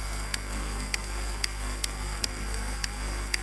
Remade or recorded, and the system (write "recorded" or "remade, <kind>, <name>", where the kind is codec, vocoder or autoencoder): remade, codec, SNAC